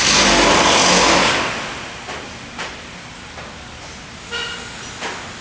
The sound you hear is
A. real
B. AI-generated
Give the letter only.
A